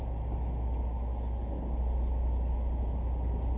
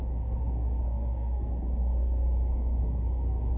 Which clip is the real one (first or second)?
first